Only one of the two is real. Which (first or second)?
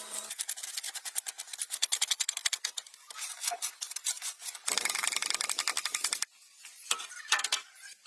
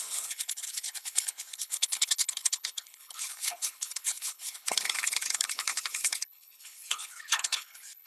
first